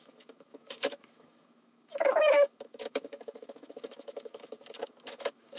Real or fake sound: fake